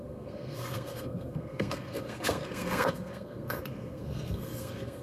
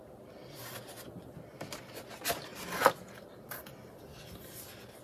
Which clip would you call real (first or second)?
second